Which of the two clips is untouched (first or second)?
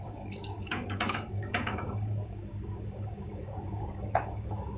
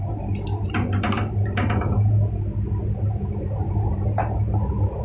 second